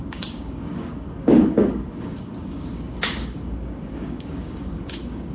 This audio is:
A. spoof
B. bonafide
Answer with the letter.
A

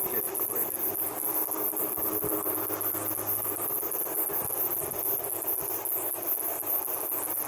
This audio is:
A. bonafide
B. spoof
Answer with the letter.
A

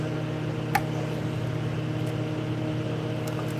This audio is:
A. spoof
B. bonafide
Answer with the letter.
B